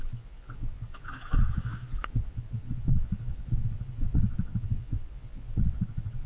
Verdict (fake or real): fake